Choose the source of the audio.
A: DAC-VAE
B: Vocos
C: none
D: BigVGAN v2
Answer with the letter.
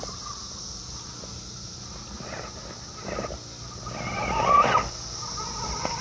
C